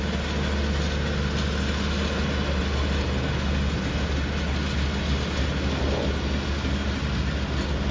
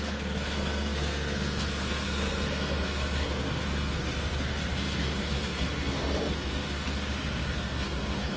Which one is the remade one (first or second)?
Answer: second